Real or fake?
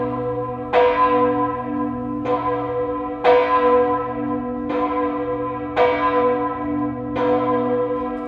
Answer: real